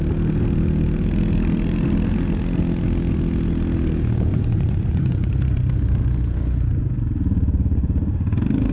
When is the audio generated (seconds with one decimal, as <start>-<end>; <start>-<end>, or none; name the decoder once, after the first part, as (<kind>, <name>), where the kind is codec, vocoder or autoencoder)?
4.3-5.3 (vocoder, Vocos)